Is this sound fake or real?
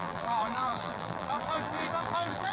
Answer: fake